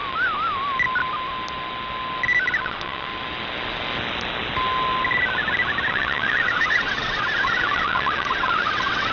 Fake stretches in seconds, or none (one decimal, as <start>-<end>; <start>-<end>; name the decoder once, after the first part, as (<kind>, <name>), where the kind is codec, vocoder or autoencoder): 2.6-3.1 (vocoder, WaveNeXt); 5.9-9.1